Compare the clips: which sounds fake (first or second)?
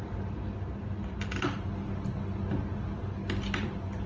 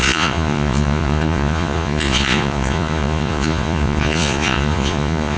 second